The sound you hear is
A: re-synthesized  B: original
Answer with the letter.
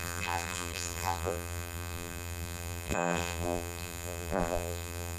A